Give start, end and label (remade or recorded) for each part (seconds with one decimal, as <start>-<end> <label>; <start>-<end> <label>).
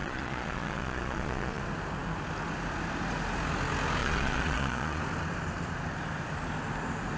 0.0-1.6 remade; 1.6-4.0 recorded; 4.0-5.0 remade; 5.0-7.2 recorded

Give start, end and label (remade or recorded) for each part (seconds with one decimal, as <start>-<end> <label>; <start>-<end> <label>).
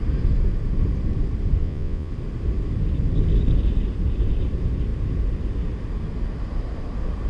0.0-1.6 recorded; 1.6-2.1 remade; 2.1-7.3 recorded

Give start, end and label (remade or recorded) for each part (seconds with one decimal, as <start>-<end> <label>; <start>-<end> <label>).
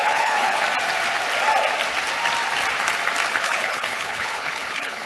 0.0-0.6 remade; 0.6-3.3 recorded; 3.3-5.1 remade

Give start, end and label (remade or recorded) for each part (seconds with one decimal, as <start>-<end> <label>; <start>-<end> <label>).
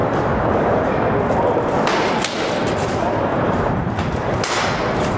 0.0-0.9 remade; 0.9-3.3 recorded; 3.3-4.4 remade; 4.4-5.2 recorded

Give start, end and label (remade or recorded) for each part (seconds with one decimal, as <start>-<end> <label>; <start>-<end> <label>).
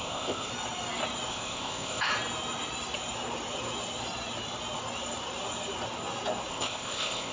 0.0-0.5 remade; 0.5-1.3 recorded; 1.3-2.1 remade; 2.1-6.5 recorded; 6.5-7.3 remade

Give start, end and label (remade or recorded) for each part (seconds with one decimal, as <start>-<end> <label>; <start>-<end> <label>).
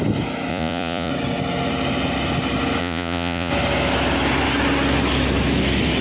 0.0-0.5 recorded; 0.5-1.1 remade; 1.1-2.8 recorded; 2.8-3.5 remade; 3.5-6.0 recorded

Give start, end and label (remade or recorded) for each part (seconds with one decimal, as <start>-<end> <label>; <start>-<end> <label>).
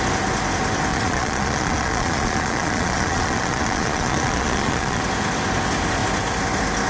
0.0-0.9 recorded; 0.9-5.0 remade; 5.0-6.9 recorded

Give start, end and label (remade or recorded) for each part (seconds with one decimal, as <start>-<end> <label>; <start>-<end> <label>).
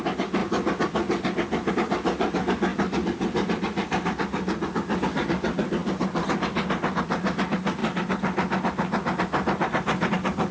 0.0-10.5 recorded